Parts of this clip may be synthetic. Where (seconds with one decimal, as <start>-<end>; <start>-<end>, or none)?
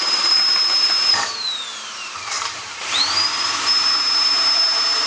0.0-5.1